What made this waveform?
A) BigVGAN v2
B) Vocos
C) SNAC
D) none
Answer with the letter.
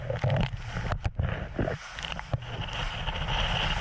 D